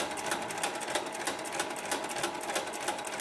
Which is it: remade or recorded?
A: recorded